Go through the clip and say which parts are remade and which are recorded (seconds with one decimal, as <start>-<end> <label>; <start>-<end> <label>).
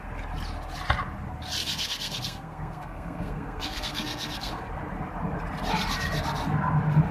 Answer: 0.0-1.6 recorded; 1.6-4.5 remade; 4.5-7.1 recorded